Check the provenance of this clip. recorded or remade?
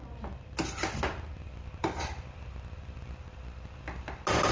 recorded